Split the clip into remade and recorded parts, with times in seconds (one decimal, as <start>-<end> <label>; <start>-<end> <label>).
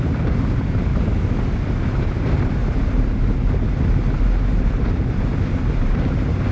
0.0-0.9 remade; 0.9-2.1 recorded; 2.1-2.6 remade; 2.6-4.7 recorded; 4.7-6.5 remade